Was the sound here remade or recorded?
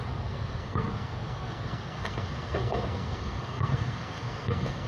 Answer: remade